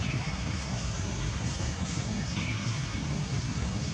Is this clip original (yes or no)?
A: no